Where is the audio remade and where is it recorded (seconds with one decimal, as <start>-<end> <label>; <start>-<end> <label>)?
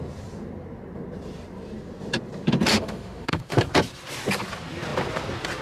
0.0-2.7 recorded; 2.7-3.6 remade; 3.6-5.6 recorded